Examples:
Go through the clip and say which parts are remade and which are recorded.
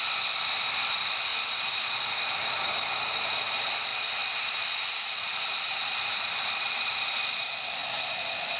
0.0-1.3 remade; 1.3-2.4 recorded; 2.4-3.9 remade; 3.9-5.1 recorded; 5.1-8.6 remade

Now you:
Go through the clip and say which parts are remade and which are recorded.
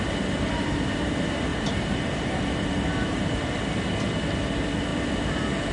0.0-1.5 recorded; 1.5-3.5 remade; 3.5-5.7 recorded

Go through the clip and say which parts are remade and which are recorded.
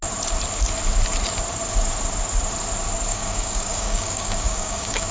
0.0-3.1 recorded; 3.1-5.1 remade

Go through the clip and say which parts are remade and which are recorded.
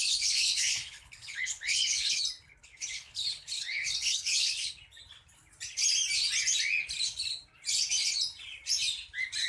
0.0-2.2 remade; 2.2-2.6 recorded; 2.6-4.8 remade; 4.8-9.5 recorded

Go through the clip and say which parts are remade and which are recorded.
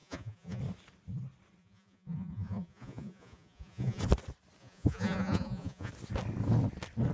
0.0-0.6 remade; 0.6-1.6 recorded; 1.6-4.0 remade; 4.0-4.6 recorded; 4.6-5.9 remade; 5.9-7.1 recorded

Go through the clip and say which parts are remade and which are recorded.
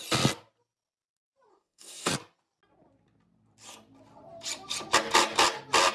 0.0-1.5 recorded; 1.5-2.1 remade; 2.1-5.9 recorded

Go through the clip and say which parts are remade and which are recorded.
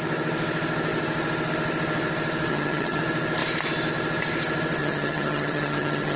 0.0-2.5 recorded; 2.5-3.0 remade; 3.0-4.8 recorded; 4.8-6.2 remade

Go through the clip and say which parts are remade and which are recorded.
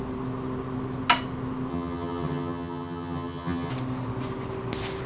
0.0-1.7 recorded; 1.7-3.7 remade; 3.7-5.1 recorded